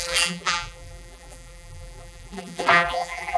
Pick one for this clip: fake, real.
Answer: fake